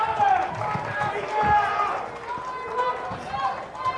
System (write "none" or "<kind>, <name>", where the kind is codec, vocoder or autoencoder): none